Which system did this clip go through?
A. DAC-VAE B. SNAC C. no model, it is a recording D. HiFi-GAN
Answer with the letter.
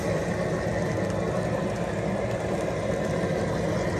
C